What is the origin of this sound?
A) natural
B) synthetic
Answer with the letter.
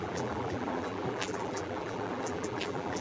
B